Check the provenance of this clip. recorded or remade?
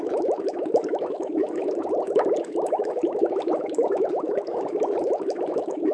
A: remade